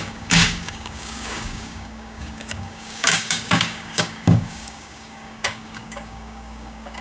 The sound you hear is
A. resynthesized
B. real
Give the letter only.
A